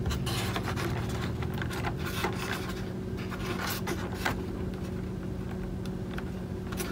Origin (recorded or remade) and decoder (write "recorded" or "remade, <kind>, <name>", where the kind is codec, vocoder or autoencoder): recorded